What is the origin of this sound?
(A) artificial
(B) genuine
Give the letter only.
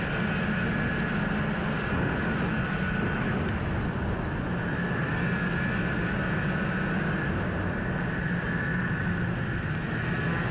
B